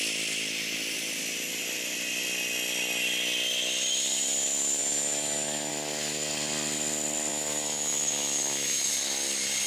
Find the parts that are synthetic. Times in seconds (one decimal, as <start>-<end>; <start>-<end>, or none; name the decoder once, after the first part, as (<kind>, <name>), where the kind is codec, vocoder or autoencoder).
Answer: 4.8-5.7 (autoencoder, DAC-VAE); 7.3-8.9